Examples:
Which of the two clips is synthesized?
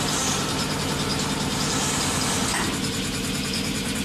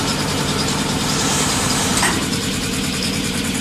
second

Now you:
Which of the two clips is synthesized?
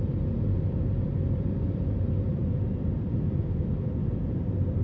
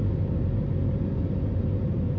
first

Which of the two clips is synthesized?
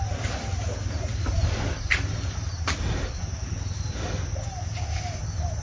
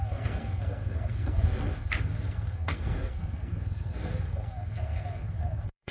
second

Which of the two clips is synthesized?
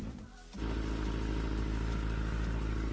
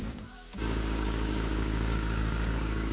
second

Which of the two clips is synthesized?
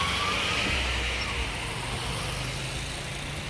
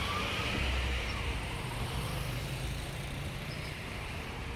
second